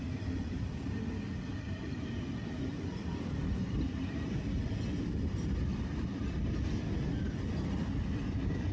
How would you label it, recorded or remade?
remade